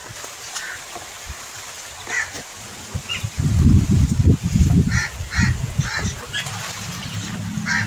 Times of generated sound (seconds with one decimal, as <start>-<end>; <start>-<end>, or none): none